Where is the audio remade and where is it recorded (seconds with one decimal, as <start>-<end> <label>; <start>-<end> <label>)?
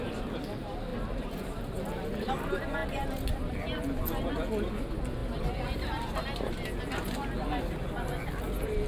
0.0-8.9 recorded